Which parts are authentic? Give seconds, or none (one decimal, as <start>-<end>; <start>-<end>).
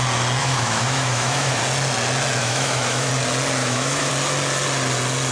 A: 0.0-0.4; 1.6-2.4; 3.1-3.6; 4.1-5.3